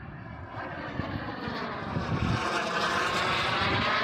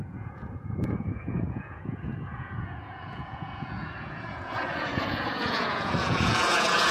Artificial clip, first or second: second